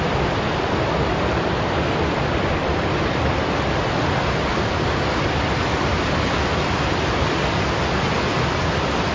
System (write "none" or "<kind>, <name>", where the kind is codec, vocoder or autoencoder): none